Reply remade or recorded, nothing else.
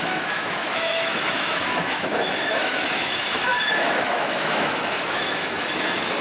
remade